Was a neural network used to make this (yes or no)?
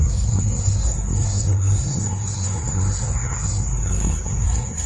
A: yes